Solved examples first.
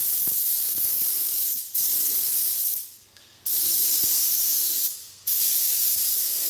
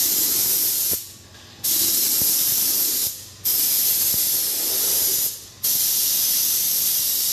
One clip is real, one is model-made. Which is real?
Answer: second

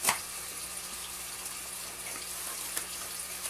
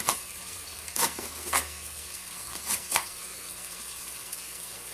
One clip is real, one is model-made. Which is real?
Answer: first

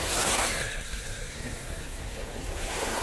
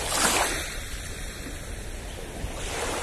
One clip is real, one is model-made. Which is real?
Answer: second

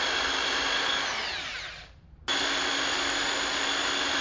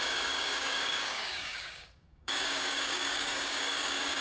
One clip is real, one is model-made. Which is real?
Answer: first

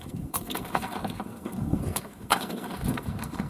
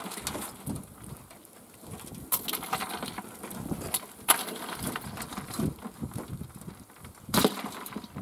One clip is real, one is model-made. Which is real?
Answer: second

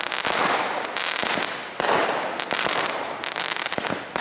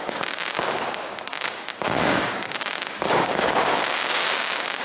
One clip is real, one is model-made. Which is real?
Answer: first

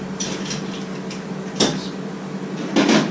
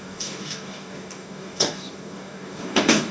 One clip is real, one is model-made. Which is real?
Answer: first